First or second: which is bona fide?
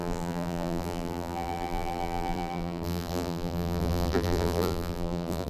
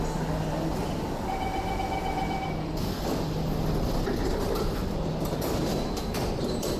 second